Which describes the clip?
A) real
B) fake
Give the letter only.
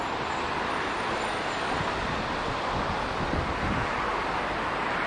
A